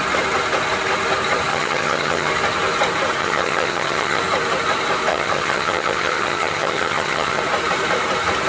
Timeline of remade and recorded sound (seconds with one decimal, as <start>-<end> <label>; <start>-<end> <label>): 0.0-1.5 recorded; 1.5-2.3 remade; 2.3-3.2 recorded; 3.2-4.2 remade; 4.2-5.1 recorded; 5.1-7.4 remade; 7.4-8.5 recorded